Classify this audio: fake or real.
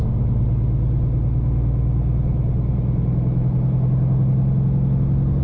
real